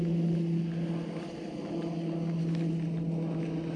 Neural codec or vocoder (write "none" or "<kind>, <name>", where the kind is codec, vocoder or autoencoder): none